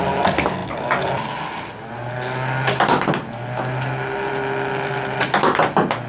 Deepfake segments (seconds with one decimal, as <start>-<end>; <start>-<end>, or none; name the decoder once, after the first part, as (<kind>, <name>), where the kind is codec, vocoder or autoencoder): none